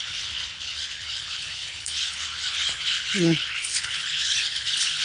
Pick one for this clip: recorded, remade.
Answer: remade